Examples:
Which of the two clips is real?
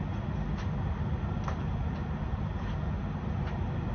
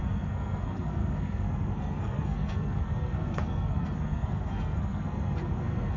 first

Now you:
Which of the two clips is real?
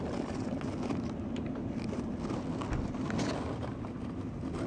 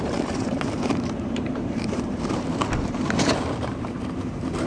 first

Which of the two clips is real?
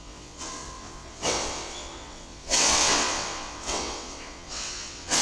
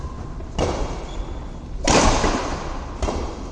second